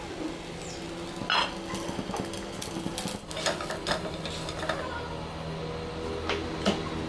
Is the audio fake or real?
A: real